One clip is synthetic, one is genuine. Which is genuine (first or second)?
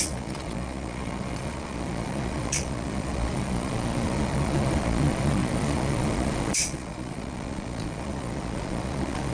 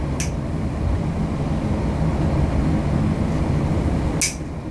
second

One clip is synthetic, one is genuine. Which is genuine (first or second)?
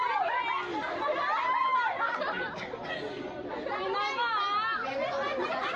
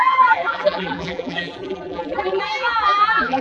first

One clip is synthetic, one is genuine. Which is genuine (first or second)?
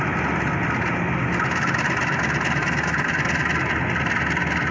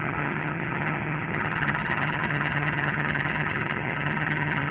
first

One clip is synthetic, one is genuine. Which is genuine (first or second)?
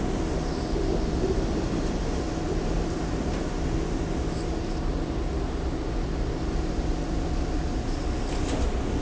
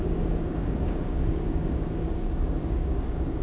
first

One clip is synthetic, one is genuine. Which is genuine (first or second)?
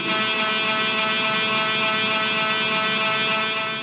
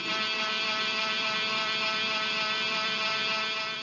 first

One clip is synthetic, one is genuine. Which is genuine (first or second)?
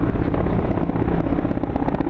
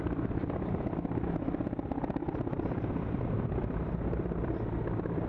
first